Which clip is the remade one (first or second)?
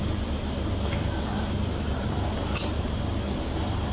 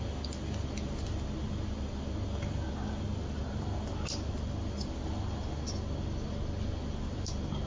first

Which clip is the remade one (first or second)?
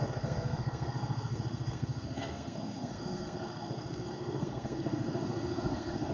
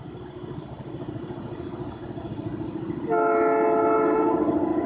first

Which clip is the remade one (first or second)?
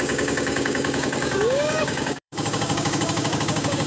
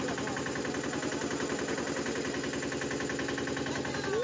first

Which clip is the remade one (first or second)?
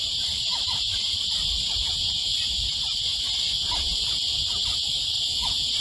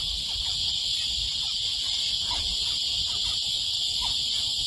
first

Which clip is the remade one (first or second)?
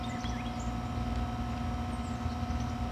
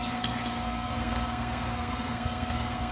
second